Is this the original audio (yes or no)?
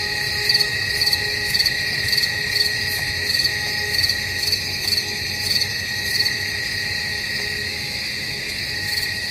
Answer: no